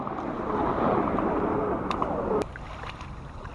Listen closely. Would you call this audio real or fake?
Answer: real